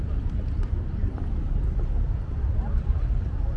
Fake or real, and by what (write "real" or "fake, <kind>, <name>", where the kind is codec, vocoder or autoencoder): fake, vocoder, BigVGAN v2